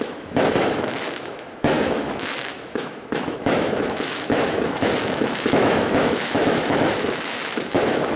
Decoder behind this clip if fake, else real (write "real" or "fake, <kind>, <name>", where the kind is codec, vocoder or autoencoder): fake, autoencoder, DAC-VAE